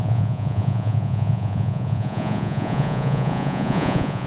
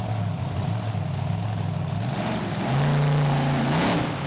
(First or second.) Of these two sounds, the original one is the second